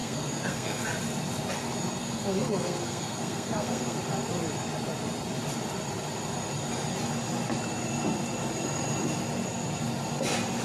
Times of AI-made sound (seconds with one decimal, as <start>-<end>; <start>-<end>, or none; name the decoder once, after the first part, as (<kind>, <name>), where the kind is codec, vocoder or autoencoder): 0.0-0.8 (codec, SNAC); 2.0-4.0